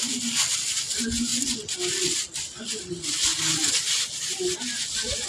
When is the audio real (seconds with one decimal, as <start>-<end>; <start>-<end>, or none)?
0.0-5.3